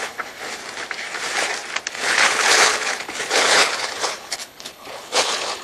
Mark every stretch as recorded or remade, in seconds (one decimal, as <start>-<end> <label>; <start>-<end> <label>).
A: 0.0-0.6 remade; 0.6-1.9 recorded; 1.9-5.6 remade